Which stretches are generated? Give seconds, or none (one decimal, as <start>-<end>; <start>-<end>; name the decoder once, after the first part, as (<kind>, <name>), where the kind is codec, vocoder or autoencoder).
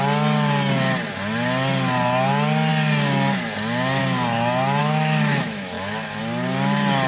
4.8-6.2 (autoencoder, DAC-VAE)